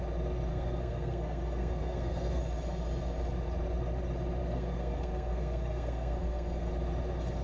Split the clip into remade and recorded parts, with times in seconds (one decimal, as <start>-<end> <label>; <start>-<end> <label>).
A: 0.0-0.5 recorded; 0.5-2.4 remade; 2.4-4.4 recorded; 4.4-6.7 remade; 6.7-7.4 recorded